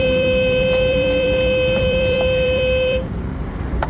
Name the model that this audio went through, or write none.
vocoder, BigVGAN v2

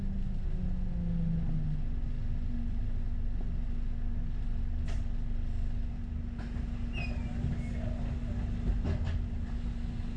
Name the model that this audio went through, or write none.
none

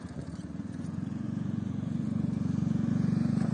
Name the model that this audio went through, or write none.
vocoder, Vocos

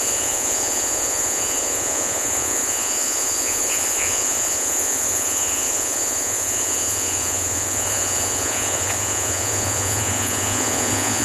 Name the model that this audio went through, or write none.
vocoder, Vocos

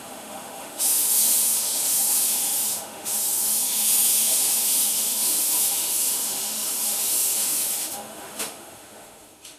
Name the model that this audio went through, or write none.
autoencoder, DAC-VAE